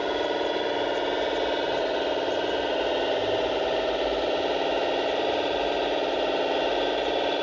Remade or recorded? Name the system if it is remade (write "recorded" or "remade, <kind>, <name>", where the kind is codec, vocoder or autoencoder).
recorded